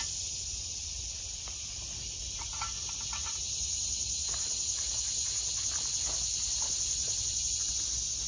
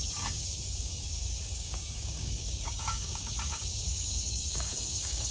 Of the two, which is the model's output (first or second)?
second